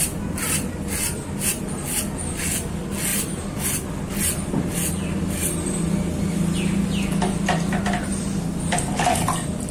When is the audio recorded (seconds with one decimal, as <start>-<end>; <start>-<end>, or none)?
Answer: 0.0-9.7